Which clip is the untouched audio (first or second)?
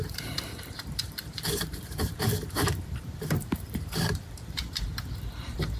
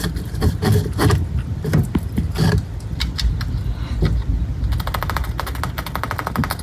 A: second